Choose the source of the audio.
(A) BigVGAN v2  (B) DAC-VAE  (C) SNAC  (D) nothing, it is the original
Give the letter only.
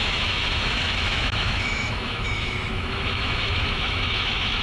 B